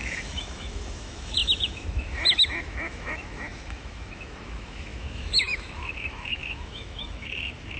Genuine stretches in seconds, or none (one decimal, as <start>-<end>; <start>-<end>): none